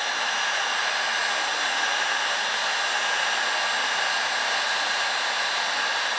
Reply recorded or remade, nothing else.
recorded